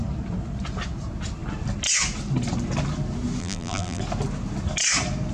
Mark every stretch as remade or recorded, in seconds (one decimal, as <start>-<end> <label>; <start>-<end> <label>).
0.0-3.4 recorded; 3.4-4.0 remade; 4.0-5.3 recorded